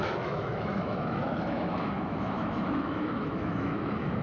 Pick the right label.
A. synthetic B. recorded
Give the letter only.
A